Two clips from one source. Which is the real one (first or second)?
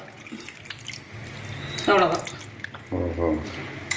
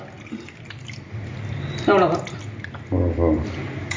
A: first